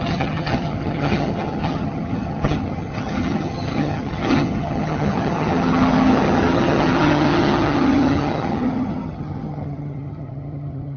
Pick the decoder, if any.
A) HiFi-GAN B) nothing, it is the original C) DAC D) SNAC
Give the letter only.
A